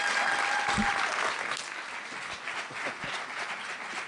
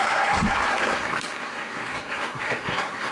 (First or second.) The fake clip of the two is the second